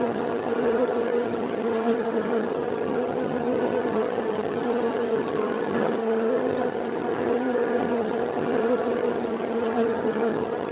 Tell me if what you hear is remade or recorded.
remade